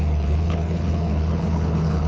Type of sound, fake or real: fake